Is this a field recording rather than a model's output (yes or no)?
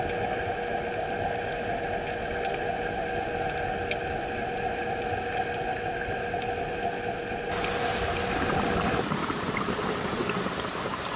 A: yes